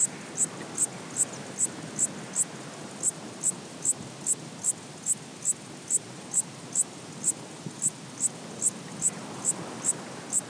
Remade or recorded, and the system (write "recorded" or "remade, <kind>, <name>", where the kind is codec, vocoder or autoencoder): recorded